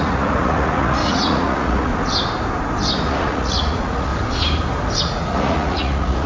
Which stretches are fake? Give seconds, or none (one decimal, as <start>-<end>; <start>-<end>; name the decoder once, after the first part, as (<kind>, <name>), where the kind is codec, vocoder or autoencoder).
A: 0.0-1.9 (vocoder, Vocos); 3.1-4.1; 5.0-6.3